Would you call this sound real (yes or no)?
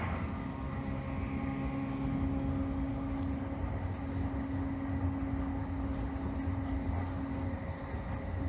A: yes